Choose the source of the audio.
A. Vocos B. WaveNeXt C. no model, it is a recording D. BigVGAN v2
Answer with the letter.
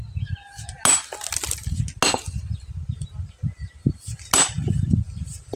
C